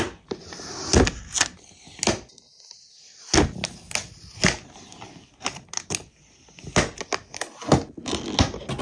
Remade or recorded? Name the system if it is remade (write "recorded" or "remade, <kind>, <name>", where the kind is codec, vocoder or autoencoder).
recorded